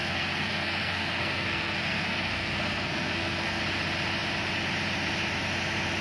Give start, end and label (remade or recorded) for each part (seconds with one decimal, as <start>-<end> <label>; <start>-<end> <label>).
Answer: 0.0-3.6 remade; 3.6-6.0 recorded